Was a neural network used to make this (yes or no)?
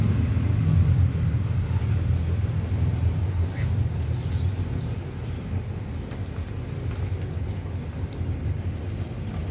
no